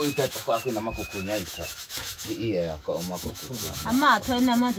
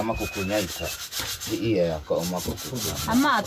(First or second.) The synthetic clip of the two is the first